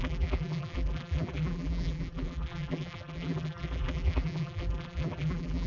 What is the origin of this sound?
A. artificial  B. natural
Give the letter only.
A